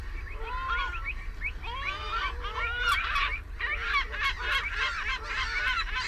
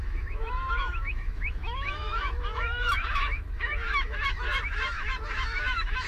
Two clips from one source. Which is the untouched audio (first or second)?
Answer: first